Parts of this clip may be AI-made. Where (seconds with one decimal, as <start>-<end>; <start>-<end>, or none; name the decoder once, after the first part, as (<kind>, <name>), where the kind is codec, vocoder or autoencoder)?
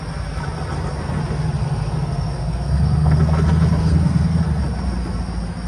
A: 1.6-3.2 (codec, SNAC); 3.8-4.4